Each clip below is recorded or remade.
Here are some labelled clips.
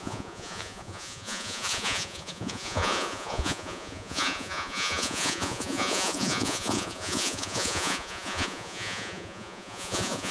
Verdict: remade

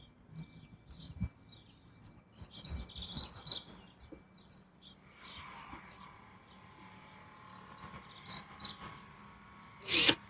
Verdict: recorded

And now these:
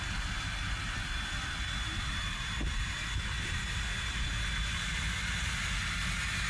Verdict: recorded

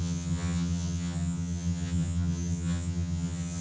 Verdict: remade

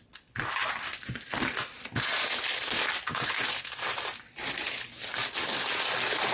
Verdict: recorded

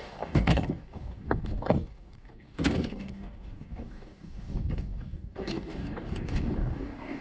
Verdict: remade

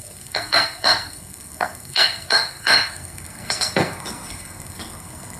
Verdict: remade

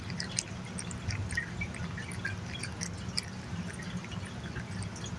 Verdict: recorded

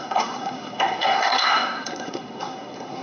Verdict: remade